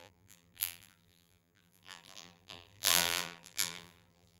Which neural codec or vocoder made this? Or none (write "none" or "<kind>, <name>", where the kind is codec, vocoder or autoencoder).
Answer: vocoder, BigVGAN v2